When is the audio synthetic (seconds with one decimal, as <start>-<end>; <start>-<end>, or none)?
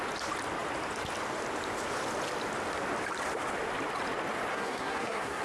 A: 4.5-5.4